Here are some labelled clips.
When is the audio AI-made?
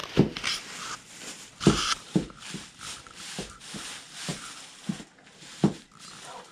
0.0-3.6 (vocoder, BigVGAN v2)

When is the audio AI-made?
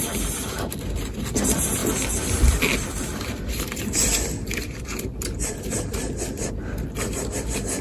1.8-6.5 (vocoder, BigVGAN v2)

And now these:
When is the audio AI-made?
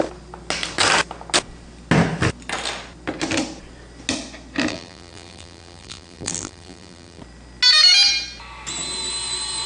4.7-7.2 (vocoder, BigVGAN v2)